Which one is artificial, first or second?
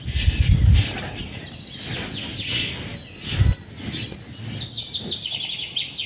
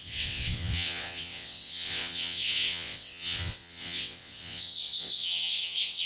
second